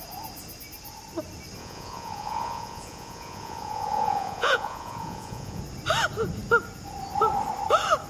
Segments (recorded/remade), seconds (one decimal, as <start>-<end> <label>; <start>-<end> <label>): 0.0-1.6 recorded; 1.6-5.6 remade; 5.6-8.1 recorded